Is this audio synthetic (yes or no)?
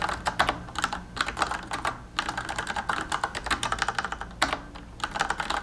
no